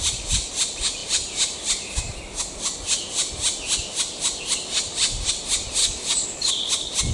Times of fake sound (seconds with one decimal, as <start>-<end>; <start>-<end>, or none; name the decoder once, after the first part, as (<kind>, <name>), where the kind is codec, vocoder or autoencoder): 5.8-6.5 (codec, DAC)